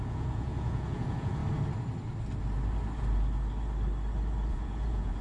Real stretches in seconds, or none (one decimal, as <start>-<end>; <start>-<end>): 1.4-4.5